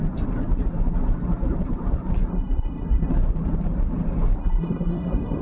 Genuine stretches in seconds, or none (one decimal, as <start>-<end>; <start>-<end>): 0.0-2.3; 3.1-4.4